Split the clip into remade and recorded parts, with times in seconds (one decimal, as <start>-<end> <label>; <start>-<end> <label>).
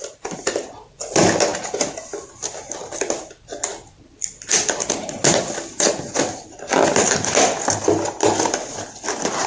0.0-1.5 recorded; 1.5-2.0 remade; 2.0-9.5 recorded